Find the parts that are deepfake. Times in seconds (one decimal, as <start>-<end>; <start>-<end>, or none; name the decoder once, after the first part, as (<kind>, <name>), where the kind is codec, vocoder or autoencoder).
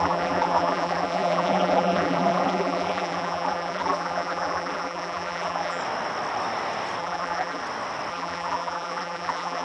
0.0-5.8 (vocoder, BigVGAN v2); 7.0-7.6; 8.1-9.6